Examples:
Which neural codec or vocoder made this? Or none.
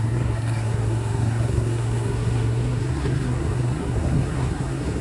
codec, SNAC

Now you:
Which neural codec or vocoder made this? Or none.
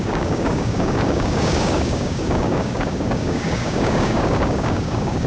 codec, DAC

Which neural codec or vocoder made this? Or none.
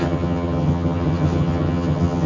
vocoder, HiFi-GAN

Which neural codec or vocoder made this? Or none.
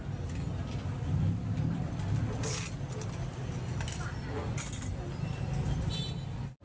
none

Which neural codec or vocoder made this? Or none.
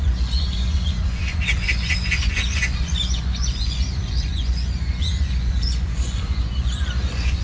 vocoder, Vocos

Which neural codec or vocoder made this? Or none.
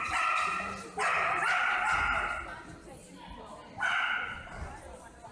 none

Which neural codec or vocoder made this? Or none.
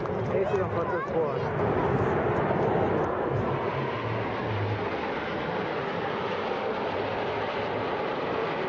none